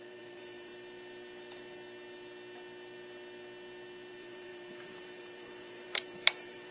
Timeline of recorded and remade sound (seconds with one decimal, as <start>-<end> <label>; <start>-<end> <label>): 0.0-0.7 remade; 0.7-4.1 recorded; 4.1-6.7 remade